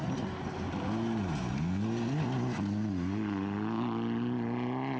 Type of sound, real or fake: real